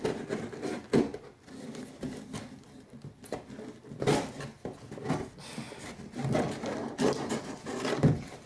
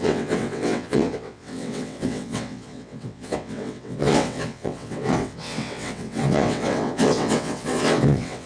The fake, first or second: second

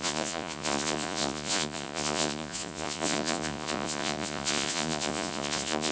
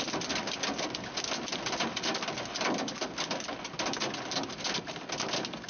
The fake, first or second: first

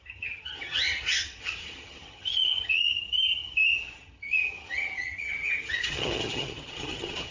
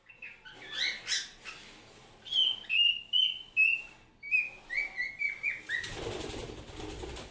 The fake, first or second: first